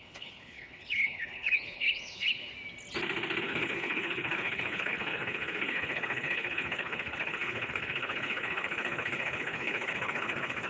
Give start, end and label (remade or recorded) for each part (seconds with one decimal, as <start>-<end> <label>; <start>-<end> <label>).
0.0-2.5 remade; 2.5-3.4 recorded; 3.4-10.7 remade